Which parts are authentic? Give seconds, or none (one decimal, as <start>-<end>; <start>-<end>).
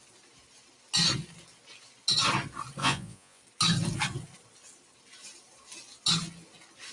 0.0-2.8; 3.4-6.9